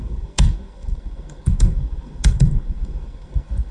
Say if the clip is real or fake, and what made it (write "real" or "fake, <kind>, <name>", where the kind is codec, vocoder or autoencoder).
fake, codec, SNAC